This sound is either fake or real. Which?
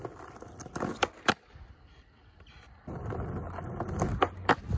real